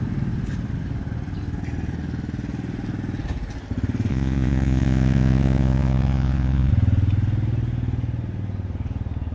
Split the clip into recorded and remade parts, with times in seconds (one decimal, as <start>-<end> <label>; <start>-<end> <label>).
0.0-4.1 recorded; 4.1-6.7 remade; 6.7-9.3 recorded